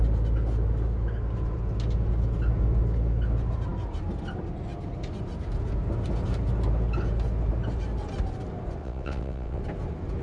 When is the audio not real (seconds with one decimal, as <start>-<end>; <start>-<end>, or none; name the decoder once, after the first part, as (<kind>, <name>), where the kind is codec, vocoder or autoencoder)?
8.8-9.6 (vocoder, WaveNeXt)